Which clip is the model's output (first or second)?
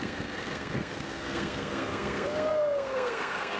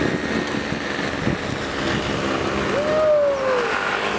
first